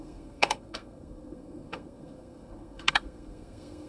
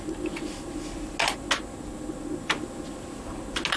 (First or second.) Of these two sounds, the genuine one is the second